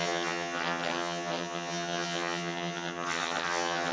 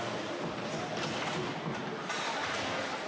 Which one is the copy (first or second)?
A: first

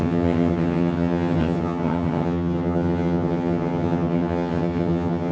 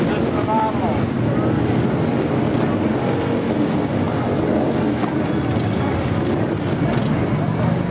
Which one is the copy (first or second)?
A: first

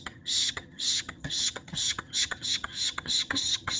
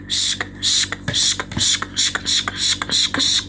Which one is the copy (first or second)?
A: first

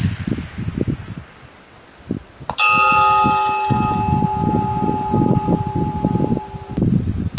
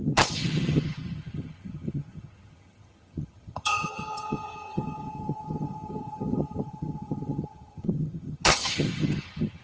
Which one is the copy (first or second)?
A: second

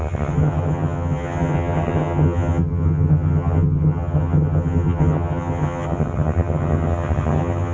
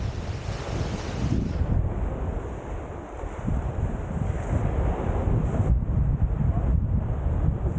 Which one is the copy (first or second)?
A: first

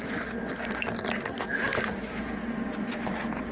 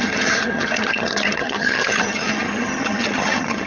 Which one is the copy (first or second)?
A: second